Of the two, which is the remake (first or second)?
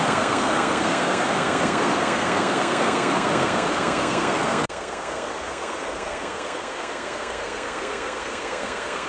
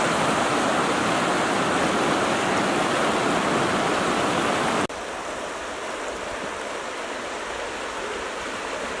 first